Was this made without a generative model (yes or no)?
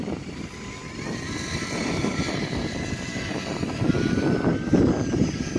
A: no